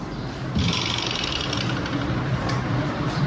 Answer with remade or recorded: remade